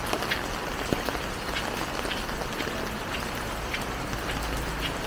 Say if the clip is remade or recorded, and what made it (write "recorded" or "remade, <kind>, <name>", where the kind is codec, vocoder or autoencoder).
recorded